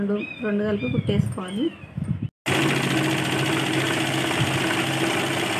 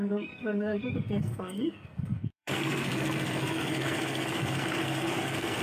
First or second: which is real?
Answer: first